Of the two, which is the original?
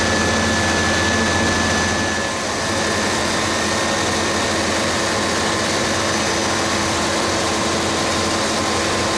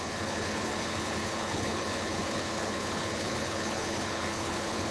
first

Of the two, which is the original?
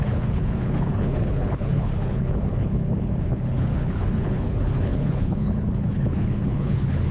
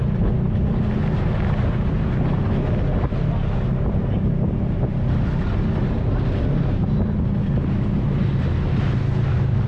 second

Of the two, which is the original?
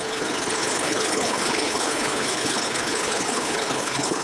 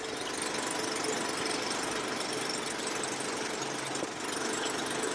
second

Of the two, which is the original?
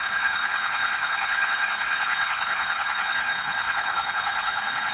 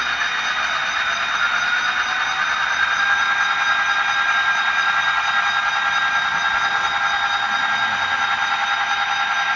second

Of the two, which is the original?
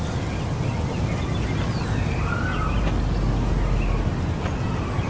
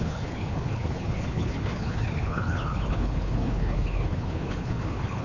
first